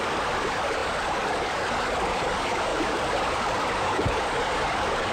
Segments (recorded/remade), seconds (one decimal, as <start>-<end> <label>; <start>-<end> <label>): 0.0-5.1 remade